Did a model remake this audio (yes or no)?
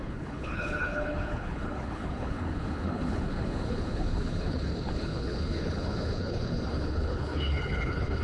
yes